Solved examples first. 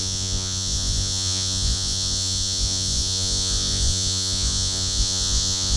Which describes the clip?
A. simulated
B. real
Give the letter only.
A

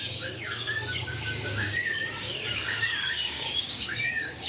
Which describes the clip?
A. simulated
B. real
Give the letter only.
A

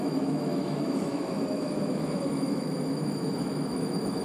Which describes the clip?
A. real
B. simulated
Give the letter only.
B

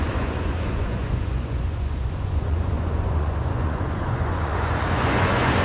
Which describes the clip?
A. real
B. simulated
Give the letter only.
B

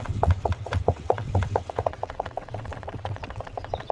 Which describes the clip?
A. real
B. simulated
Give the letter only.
B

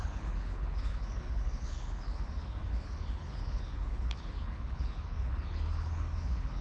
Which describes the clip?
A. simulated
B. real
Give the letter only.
A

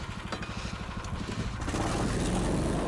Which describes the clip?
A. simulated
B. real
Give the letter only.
B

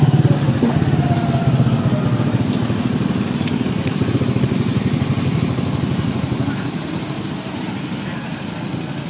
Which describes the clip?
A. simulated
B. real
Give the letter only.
B